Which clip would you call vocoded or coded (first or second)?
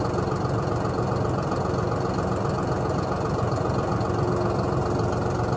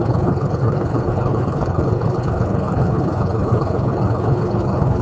second